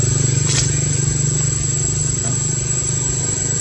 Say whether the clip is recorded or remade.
recorded